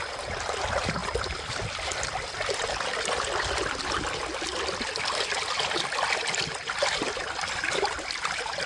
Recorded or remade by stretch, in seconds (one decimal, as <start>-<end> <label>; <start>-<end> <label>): 0.0-8.7 recorded